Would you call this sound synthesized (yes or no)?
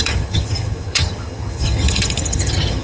yes